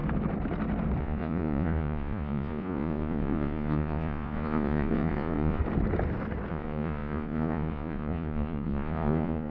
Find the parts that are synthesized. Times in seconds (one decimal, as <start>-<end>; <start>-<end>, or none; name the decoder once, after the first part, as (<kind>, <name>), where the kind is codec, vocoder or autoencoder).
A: 1.0-5.6 (vocoder, Vocos); 6.5-9.5